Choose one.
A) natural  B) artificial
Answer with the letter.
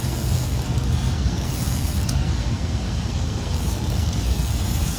B